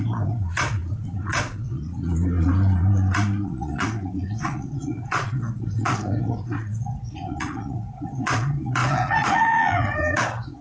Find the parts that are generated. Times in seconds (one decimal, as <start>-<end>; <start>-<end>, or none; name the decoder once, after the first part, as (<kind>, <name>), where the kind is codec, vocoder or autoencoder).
0.0-10.6 (vocoder, Vocos)